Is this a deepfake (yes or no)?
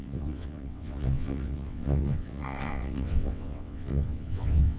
yes